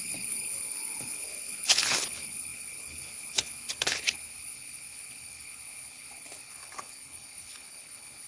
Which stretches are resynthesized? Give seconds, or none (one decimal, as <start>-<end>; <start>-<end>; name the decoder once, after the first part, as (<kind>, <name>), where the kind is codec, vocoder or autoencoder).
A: 0.0-8.3 (codec, HILCodec)